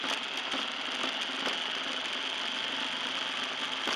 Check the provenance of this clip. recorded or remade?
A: recorded